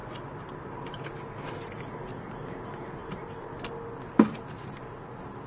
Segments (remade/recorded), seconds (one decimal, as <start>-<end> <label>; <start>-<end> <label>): 0.0-5.5 recorded